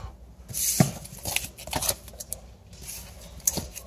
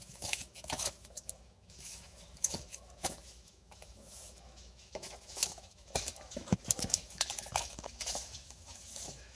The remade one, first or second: second